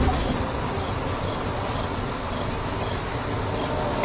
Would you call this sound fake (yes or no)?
no